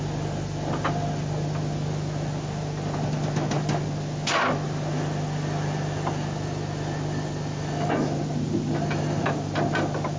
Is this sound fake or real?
real